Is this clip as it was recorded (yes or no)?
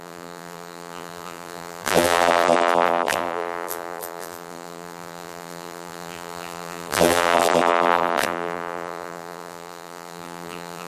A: no